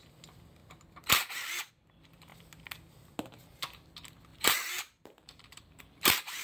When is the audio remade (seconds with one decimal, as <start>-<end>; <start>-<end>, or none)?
4.3-5.8